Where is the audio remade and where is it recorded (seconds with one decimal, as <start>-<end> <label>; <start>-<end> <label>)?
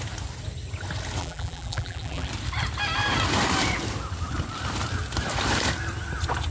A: 0.0-1.2 recorded; 1.2-2.3 remade; 2.3-6.5 recorded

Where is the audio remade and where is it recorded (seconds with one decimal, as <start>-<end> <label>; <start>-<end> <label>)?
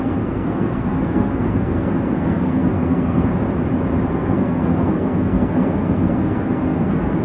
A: 0.0-3.3 remade; 3.3-4.1 recorded; 4.1-7.2 remade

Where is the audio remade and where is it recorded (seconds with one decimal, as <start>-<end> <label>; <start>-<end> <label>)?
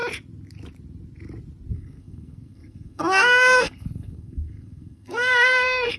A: 0.0-1.7 recorded; 1.7-6.0 remade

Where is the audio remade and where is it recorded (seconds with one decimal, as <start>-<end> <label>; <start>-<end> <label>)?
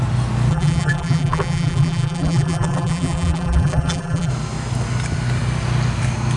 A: 0.0-0.5 recorded; 0.5-4.3 remade; 4.3-6.4 recorded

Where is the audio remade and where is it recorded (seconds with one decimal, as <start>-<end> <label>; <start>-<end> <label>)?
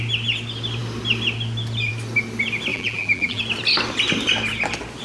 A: 0.0-2.7 recorded; 2.7-3.4 remade; 3.4-5.0 recorded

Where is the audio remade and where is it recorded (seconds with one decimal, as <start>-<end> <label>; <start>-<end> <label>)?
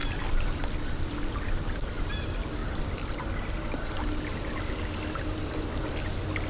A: 0.0-6.5 recorded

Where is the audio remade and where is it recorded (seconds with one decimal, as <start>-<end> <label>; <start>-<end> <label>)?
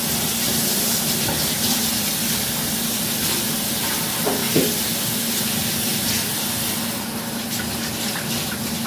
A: 0.0-8.9 recorded